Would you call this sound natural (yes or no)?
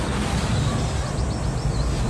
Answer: yes